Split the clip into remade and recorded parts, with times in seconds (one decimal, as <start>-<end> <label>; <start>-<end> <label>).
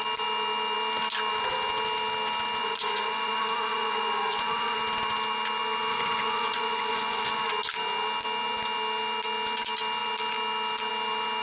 0.0-2.6 recorded; 2.6-4.8 remade; 4.8-5.9 recorded; 5.9-7.5 remade; 7.5-11.4 recorded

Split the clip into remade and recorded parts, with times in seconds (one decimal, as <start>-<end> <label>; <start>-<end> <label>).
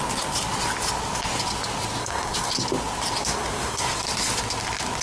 0.0-2.0 recorded; 2.0-2.5 remade; 2.5-3.2 recorded; 3.2-3.9 remade; 3.9-5.0 recorded